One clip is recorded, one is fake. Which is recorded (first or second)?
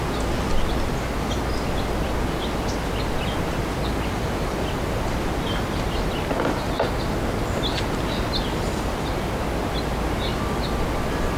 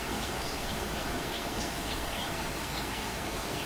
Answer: first